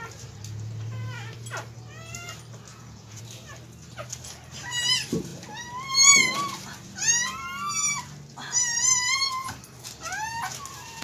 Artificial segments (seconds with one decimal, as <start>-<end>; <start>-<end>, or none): 2.7-3.2